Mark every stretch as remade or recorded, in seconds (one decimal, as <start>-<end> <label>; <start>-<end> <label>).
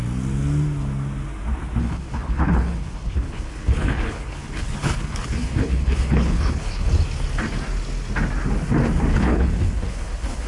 0.0-1.8 recorded; 1.8-6.9 remade; 6.9-9.1 recorded; 9.1-10.5 remade